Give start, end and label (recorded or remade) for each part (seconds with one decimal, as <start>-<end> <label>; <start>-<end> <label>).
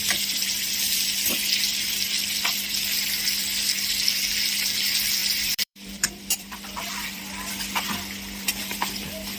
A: 0.0-5.2 recorded; 5.2-7.2 remade; 7.2-9.4 recorded